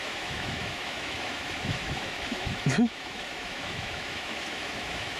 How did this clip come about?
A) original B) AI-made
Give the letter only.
B